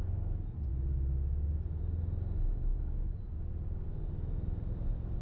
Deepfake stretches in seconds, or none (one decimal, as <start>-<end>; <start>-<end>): none